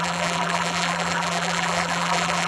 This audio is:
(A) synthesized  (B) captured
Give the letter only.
A